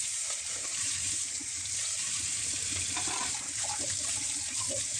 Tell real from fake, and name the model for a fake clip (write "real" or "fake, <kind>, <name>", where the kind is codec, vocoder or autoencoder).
fake, vocoder, BigVGAN v2